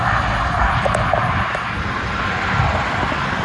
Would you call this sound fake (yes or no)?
no